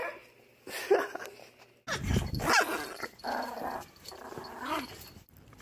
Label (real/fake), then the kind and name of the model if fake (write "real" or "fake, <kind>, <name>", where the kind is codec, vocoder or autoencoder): real